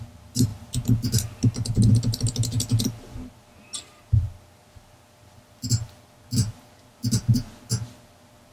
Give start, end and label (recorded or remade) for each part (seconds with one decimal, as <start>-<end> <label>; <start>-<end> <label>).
0.0-8.5 recorded